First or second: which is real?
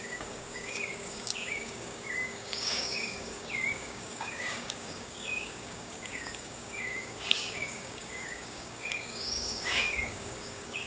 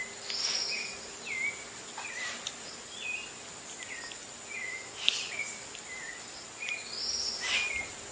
second